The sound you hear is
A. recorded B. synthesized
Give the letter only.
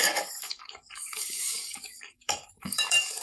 B